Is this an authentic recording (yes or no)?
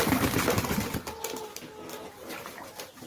yes